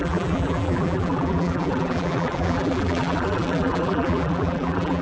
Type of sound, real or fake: fake